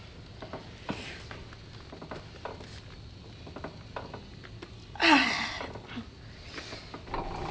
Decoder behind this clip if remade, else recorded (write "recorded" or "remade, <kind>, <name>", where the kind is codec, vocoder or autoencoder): recorded